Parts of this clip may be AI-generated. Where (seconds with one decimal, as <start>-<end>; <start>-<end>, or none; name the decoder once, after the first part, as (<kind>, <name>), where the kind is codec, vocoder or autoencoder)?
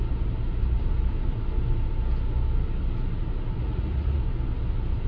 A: 3.6-4.2 (vocoder, Vocos)